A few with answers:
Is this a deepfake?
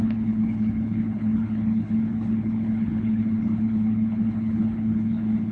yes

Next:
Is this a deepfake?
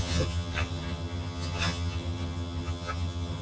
yes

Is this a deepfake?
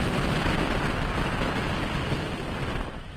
no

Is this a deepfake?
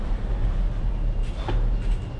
no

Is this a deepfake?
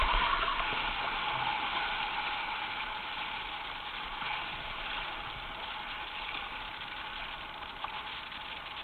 no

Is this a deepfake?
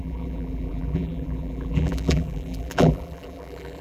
yes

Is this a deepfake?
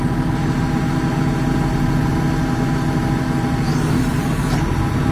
no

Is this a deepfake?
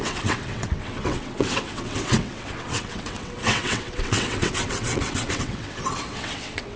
yes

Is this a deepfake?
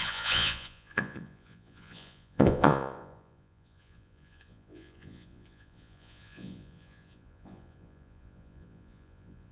yes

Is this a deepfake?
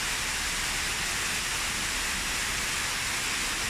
no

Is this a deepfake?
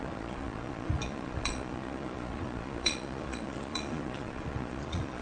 yes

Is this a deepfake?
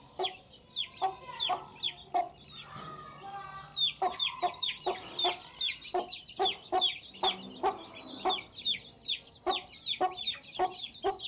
no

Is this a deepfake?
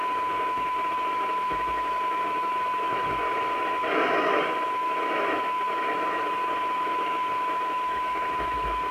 yes